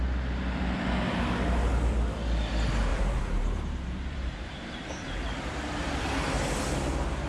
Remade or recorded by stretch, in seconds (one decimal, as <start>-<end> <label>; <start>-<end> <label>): 0.0-2.9 recorded; 2.9-5.5 remade; 5.5-7.3 recorded